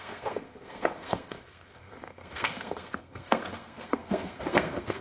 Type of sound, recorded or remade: remade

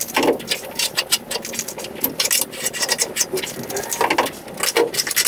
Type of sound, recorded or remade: recorded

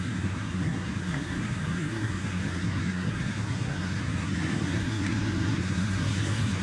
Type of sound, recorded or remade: remade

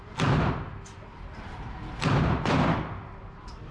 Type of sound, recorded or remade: recorded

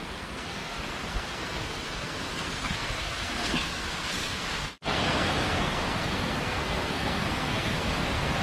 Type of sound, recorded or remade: remade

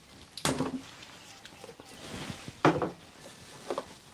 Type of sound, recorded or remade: recorded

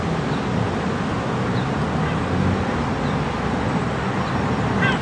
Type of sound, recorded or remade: recorded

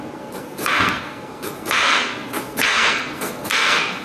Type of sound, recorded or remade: remade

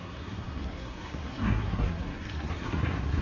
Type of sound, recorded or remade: remade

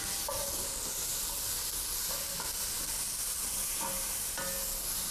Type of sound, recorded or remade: recorded